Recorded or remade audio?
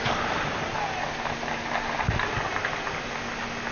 recorded